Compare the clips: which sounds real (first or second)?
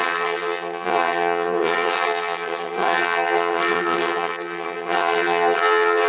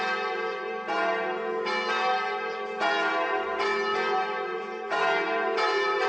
second